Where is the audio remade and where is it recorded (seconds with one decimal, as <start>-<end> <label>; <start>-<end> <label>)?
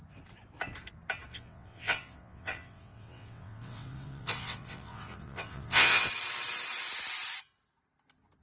0.0-1.3 recorded; 1.3-6.1 remade; 6.1-8.4 recorded